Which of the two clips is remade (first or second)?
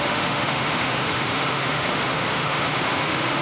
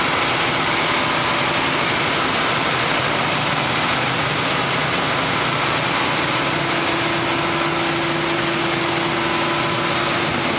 first